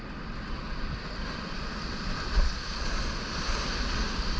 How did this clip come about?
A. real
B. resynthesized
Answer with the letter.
A